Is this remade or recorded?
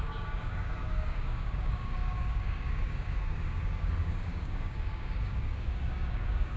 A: remade